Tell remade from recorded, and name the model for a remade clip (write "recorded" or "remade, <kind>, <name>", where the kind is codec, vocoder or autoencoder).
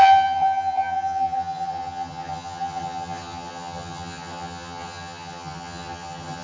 remade, vocoder, HiFi-GAN